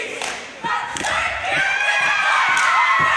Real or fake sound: real